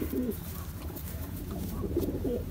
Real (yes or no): no